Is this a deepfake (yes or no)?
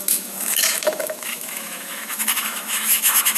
yes